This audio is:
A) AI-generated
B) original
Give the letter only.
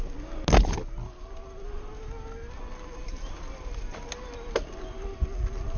B